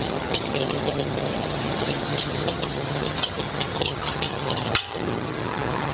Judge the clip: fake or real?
fake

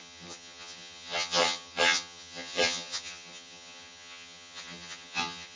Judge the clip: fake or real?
fake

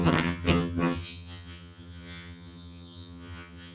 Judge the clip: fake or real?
fake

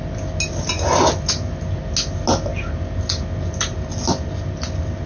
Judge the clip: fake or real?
real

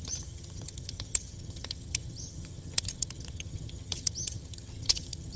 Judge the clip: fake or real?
fake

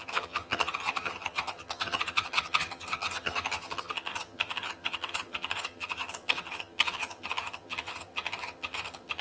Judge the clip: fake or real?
fake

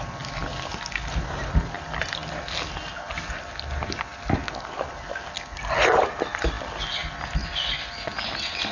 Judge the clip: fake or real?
real